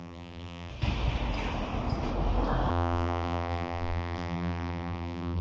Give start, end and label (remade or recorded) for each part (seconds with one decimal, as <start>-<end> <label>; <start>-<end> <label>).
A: 0.0-0.7 remade; 0.7-2.7 recorded; 2.7-5.4 remade